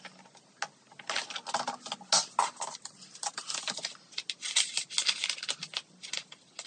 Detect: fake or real real